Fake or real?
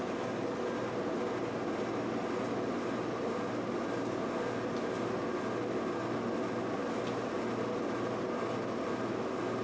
real